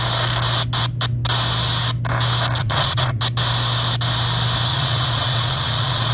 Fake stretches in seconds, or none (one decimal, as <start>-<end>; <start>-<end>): 2.6-3.2; 4.7-6.1